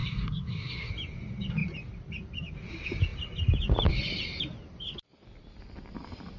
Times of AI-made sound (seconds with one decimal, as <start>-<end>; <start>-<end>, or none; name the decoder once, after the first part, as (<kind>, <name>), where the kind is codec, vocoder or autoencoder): 0.0-0.9 (codec, SNAC)